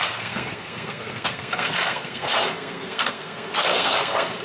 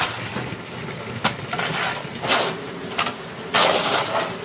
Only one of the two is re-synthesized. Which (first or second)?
first